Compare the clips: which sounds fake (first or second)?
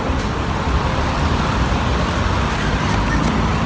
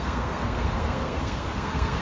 second